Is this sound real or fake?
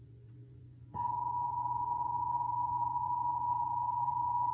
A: fake